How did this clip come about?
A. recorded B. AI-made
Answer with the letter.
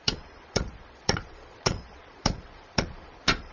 B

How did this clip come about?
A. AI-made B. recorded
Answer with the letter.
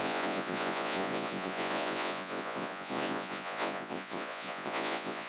A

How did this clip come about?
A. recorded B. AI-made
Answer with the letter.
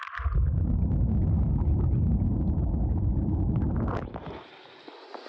A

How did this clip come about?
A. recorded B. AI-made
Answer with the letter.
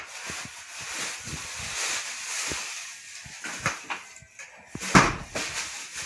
A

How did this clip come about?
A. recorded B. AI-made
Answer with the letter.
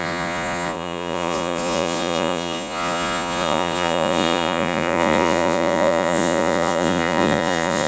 B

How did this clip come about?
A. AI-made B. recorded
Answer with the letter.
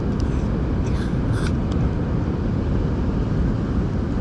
B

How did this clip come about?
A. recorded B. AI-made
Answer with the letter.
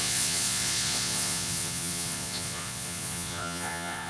B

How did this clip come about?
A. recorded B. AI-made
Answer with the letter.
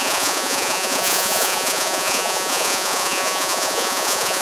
B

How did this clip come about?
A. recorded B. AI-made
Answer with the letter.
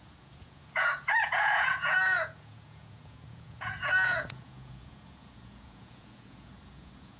B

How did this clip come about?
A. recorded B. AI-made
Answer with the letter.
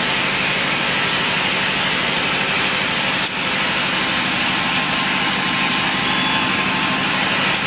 A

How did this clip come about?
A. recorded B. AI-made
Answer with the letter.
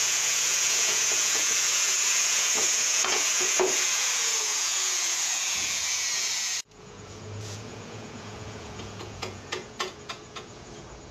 B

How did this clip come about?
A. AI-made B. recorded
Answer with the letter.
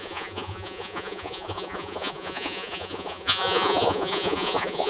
A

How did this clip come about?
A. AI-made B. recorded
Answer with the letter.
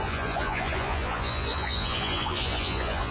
A